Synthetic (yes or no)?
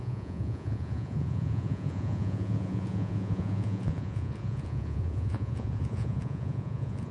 yes